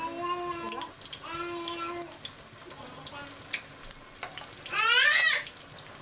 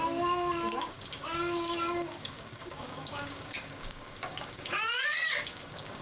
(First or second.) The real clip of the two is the first